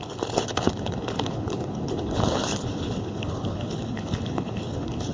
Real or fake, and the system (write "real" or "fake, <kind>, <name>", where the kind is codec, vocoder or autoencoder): fake, codec, HILCodec